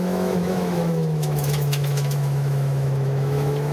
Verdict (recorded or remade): remade